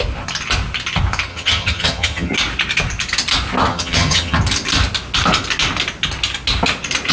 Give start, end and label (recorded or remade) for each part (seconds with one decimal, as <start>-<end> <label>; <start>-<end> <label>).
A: 0.0-1.3 recorded; 1.3-2.3 remade; 2.3-3.7 recorded; 3.7-4.4 remade; 4.4-7.1 recorded